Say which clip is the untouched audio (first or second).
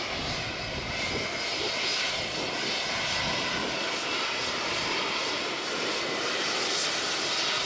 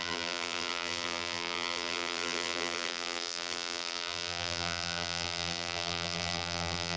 first